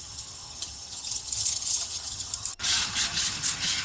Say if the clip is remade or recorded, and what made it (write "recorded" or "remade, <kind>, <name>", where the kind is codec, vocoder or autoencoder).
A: remade, vocoder, HiFi-GAN